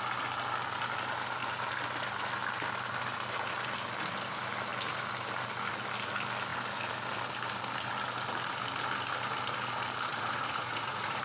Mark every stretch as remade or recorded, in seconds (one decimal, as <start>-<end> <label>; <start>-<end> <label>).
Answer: 0.0-10.1 recorded; 10.1-11.2 remade